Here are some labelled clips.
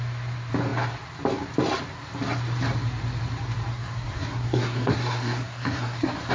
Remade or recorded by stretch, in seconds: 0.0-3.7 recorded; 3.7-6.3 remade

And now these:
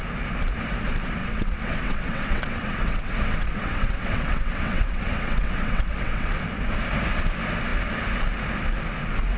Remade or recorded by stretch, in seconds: 0.0-1.2 recorded; 1.2-6.3 remade; 6.3-9.4 recorded

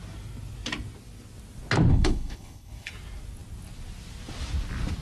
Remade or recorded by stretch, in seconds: 0.0-1.9 recorded; 1.9-2.9 remade; 2.9-5.0 recorded

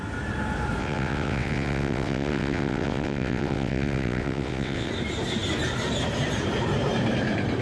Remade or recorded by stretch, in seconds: 0.0-0.8 recorded; 0.8-4.9 remade; 4.9-7.6 recorded

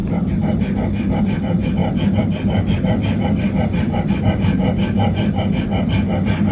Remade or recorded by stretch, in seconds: 0.0-1.8 recorded; 1.8-4.2 remade; 4.2-6.5 recorded